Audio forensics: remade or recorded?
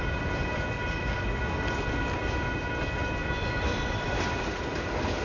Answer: recorded